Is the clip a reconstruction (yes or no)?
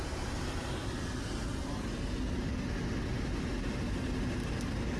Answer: no